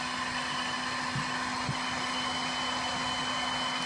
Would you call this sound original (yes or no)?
yes